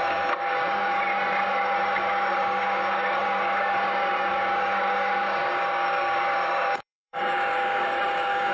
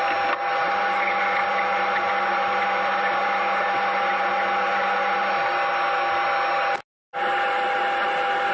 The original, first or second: second